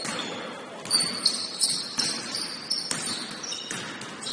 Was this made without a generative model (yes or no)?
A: yes